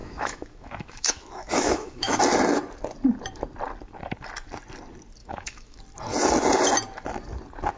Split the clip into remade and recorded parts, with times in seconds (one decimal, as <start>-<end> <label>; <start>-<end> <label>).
0.0-2.2 remade; 2.2-5.2 recorded; 5.2-5.8 remade; 5.8-7.8 recorded